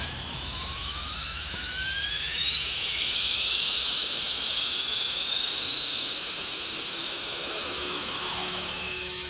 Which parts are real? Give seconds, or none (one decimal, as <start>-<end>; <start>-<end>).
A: none